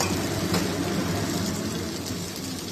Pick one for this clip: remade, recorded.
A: recorded